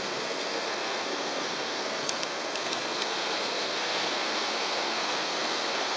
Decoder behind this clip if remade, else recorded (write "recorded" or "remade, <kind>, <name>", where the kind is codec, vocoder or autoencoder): remade, codec, SNAC